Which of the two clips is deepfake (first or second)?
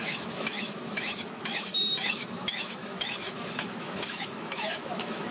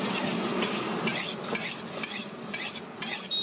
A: first